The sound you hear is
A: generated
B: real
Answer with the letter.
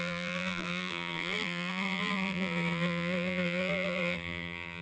A